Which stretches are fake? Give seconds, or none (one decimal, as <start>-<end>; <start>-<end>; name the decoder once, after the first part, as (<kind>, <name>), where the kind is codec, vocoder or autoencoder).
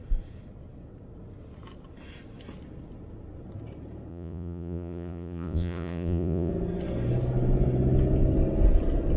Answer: 4.1-6.5 (vocoder, Vocos)